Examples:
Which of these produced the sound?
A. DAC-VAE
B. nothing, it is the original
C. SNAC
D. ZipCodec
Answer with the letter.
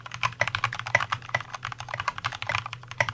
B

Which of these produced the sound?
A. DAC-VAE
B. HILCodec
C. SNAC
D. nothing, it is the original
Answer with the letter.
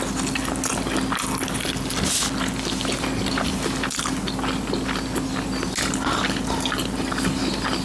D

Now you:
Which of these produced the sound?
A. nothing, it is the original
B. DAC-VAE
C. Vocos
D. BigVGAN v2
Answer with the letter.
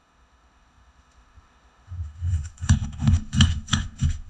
B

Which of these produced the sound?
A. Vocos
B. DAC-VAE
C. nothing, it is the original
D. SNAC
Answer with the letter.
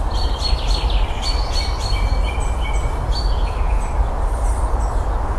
C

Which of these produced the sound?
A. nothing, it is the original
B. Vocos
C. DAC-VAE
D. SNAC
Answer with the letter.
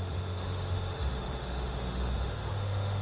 C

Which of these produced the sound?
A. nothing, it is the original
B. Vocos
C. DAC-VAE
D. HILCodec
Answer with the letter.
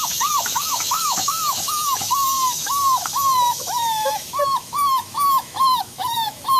C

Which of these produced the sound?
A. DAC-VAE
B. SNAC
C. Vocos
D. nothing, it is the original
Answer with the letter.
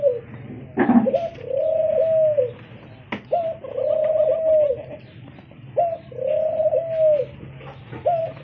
D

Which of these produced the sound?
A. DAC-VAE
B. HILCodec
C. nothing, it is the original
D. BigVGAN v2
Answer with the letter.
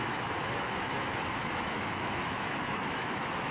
A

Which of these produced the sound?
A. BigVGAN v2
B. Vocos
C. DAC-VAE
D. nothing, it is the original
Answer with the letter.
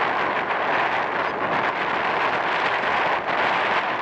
D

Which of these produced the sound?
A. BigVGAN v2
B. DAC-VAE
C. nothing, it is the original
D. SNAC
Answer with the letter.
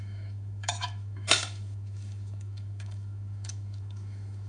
B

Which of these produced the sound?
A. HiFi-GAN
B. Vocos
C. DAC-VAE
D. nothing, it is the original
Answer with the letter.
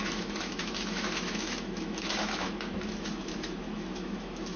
C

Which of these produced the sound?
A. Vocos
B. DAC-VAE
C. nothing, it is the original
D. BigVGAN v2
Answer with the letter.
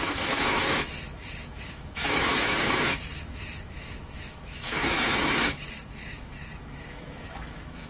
B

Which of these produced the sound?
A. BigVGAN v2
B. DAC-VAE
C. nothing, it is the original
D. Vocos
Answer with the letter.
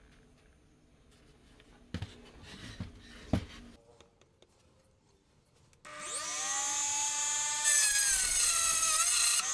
C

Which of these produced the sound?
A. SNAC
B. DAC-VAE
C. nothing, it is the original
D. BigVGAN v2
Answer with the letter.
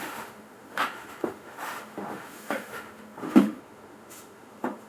B